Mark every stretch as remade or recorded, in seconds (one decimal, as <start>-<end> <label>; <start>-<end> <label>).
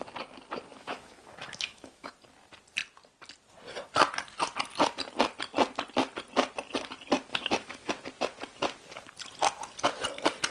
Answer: 0.0-0.7 recorded; 0.7-2.1 remade; 2.1-7.3 recorded; 7.3-7.9 remade; 7.9-10.5 recorded